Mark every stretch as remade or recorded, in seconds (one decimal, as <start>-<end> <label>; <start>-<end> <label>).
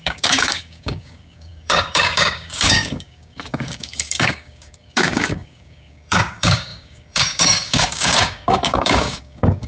0.0-9.7 remade